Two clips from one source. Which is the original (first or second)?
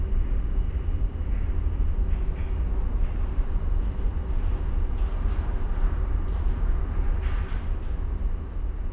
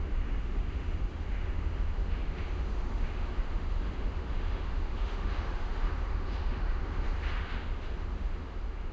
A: first